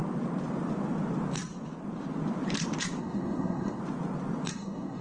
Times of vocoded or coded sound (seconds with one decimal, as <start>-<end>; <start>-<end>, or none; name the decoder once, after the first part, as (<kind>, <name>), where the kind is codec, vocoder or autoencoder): 3.0-3.8 (codec, SNAC); 4.5-5.0